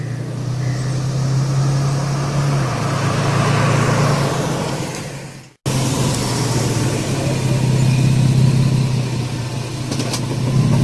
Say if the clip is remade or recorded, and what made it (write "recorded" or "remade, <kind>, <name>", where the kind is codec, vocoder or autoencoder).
recorded